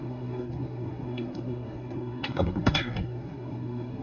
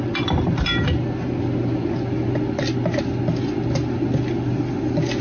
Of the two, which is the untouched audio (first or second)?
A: second